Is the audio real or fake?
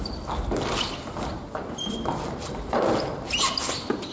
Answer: real